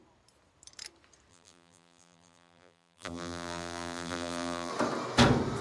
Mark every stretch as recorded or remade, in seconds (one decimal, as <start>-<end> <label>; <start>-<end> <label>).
0.0-1.3 recorded; 1.3-4.7 remade; 4.7-5.6 recorded